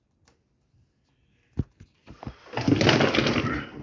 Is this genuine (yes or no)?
yes